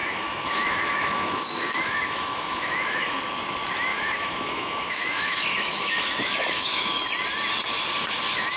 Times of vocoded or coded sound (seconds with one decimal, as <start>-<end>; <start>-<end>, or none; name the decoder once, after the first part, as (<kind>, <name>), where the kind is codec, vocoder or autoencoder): 0.0-3.2 (autoencoder, DAC-VAE); 3.9-7.0